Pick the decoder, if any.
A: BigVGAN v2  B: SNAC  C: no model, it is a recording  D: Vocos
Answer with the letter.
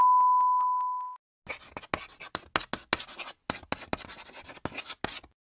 C